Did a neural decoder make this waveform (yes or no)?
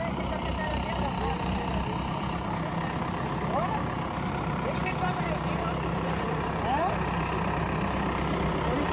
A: yes